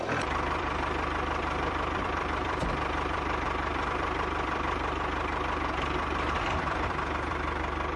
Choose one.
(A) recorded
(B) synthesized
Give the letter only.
B